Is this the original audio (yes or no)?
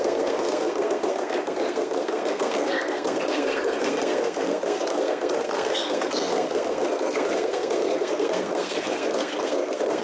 no